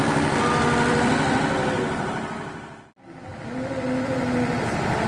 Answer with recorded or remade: remade